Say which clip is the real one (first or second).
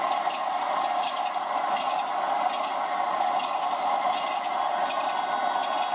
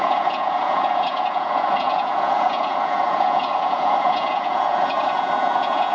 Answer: first